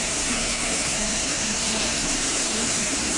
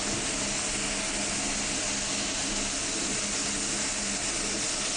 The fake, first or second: first